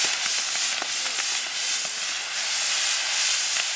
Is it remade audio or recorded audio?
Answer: recorded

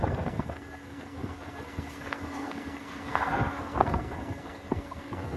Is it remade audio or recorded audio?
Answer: remade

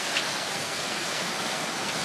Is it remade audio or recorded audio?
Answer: remade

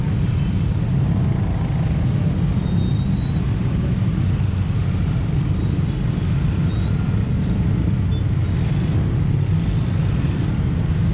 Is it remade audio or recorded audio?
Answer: recorded